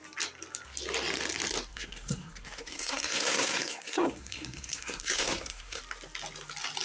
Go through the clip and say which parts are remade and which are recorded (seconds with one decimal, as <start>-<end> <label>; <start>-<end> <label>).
0.0-1.7 recorded; 1.7-5.8 remade; 5.8-6.8 recorded